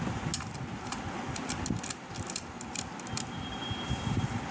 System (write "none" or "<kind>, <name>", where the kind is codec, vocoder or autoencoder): none